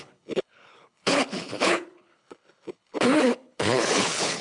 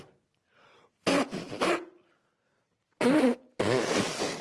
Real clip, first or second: second